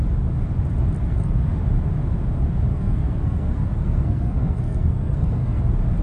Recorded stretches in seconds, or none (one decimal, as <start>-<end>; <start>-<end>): 0.0-1.0; 1.6-2.7; 5.6-6.0